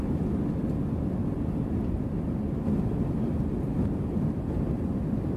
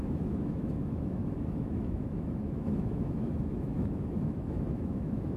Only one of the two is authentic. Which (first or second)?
first